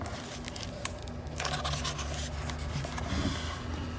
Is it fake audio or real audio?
real